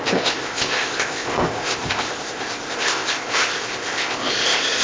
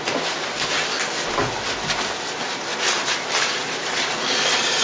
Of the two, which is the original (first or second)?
second